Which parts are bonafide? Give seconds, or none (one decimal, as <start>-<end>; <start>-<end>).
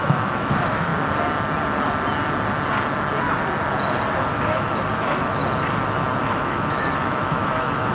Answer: 0.9-4.3; 5.4-6.2